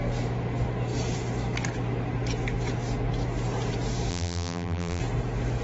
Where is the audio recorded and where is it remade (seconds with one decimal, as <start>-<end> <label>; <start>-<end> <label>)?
0.0-4.1 recorded; 4.1-5.0 remade; 5.0-5.6 recorded

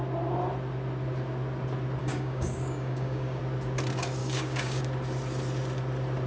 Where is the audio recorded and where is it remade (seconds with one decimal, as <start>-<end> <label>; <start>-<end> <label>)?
0.0-2.0 recorded; 2.0-3.4 remade; 3.4-4.2 recorded; 4.2-4.8 remade; 4.8-6.3 recorded

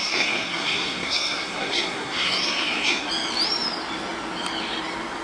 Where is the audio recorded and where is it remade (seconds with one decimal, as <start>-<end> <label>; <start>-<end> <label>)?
0.0-3.1 remade; 3.1-5.2 recorded

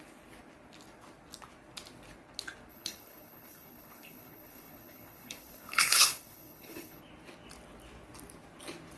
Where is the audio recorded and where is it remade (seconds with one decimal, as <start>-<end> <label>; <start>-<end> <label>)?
0.0-2.7 recorded; 2.7-7.0 remade; 7.0-9.0 recorded